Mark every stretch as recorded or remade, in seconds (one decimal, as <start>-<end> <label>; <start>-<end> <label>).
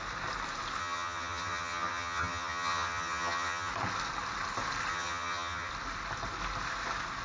0.0-0.8 recorded; 0.8-3.7 remade; 3.7-4.9 recorded; 4.9-5.7 remade; 5.7-7.2 recorded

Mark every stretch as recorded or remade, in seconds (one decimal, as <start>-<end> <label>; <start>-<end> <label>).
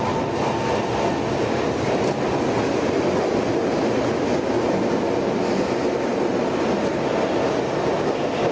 0.0-8.5 recorded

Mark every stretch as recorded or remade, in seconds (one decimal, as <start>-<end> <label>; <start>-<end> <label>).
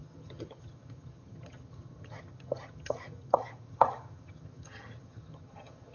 0.0-5.9 remade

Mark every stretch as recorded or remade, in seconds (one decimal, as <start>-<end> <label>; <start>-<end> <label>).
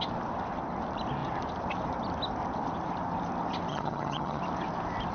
0.0-3.7 recorded; 3.7-4.4 remade; 4.4-5.1 recorded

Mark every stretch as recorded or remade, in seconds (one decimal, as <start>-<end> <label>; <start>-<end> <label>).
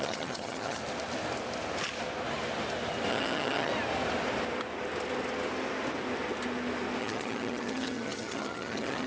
0.0-0.8 remade; 0.8-3.1 recorded; 3.1-3.7 remade; 3.7-7.0 recorded; 7.0-9.1 remade